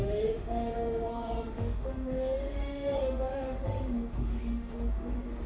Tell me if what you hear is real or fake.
fake